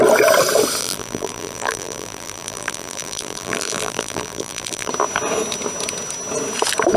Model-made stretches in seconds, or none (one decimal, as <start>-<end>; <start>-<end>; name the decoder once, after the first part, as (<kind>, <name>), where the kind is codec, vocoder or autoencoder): 0.8-4.9 (vocoder, BigVGAN v2)